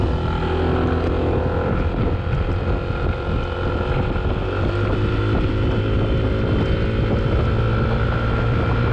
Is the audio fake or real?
real